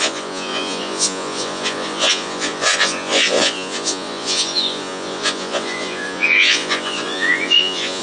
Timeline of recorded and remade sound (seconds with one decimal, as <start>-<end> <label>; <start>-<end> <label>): 0.0-8.0 remade